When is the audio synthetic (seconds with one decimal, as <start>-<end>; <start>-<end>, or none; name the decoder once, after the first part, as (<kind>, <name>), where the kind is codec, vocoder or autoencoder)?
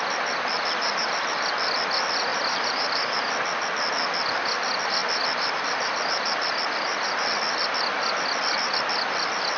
2.3-3.2 (vocoder, BigVGAN v2)